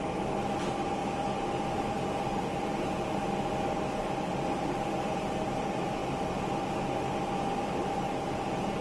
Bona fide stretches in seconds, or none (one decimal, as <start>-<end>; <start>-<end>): 0.0-8.8